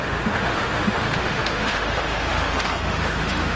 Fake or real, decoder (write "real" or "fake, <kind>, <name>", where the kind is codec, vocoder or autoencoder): fake, autoencoder, DAC-VAE